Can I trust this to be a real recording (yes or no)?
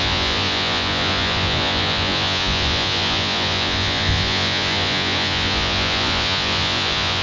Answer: no